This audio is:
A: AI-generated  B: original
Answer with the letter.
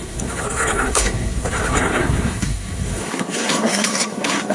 A